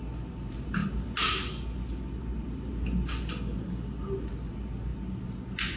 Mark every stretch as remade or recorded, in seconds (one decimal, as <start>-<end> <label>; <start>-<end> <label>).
0.0-5.8 recorded